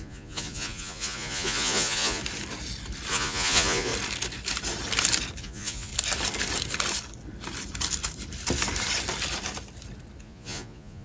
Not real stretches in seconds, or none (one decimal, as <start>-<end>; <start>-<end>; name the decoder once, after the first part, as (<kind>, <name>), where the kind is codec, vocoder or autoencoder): 0.0-2.2 (vocoder, Vocos); 3.1-3.9; 5.4-5.9; 10.2-11.0